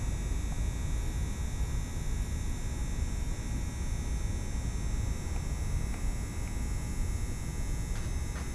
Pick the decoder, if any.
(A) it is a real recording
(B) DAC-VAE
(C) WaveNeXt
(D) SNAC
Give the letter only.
A